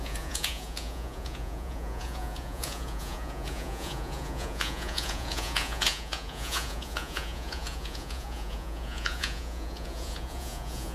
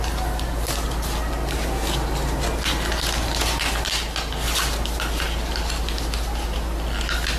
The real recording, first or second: second